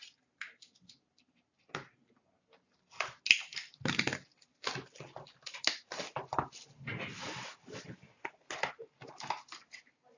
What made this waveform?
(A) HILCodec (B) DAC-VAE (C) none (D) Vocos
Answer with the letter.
C